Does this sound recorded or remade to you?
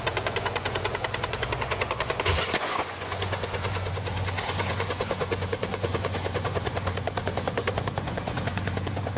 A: remade